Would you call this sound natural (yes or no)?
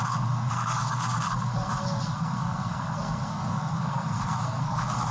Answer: no